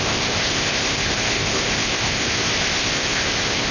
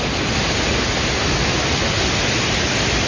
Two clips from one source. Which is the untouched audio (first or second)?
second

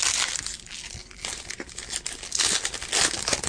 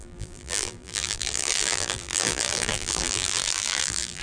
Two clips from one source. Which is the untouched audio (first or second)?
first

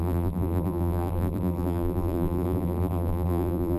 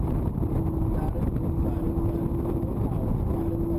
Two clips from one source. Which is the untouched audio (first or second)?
second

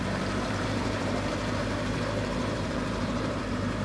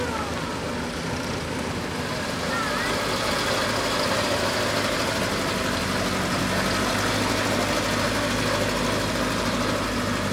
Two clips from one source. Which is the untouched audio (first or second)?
second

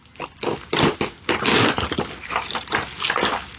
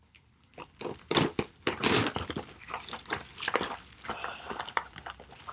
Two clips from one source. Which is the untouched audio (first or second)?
first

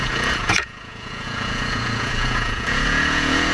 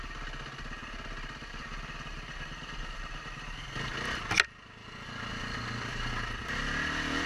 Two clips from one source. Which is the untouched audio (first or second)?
second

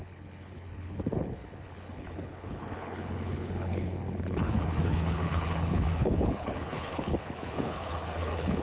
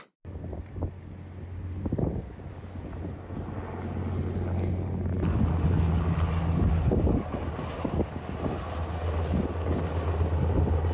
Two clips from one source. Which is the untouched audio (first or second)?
second